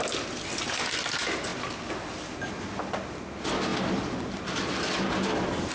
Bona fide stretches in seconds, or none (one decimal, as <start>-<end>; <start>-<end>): 0.0-5.7